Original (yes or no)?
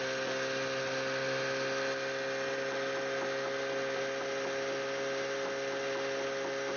yes